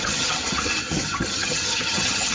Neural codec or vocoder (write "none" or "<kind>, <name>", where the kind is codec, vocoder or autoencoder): vocoder, HiFi-GAN